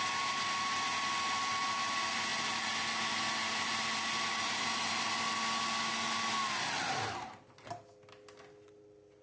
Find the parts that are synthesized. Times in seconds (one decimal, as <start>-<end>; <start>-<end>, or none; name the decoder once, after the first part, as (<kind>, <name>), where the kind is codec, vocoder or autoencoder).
none